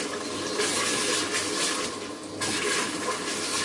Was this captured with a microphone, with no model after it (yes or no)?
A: yes